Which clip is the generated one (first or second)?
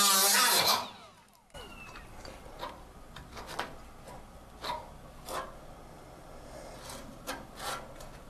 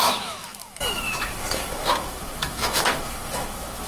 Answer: second